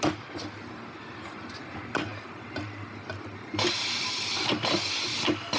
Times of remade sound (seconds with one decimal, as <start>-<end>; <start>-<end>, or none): none